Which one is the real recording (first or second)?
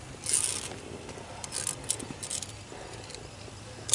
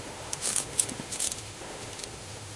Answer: first